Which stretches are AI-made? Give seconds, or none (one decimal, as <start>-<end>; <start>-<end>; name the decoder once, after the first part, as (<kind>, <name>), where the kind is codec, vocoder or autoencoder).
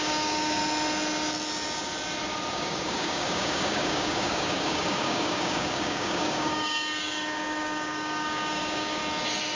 0.0-0.6 (codec, DAC); 2.5-9.0